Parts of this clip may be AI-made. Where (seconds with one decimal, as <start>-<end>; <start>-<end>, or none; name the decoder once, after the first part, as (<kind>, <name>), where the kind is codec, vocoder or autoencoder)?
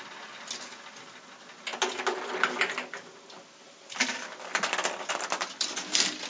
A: none